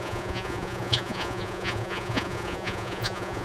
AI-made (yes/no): yes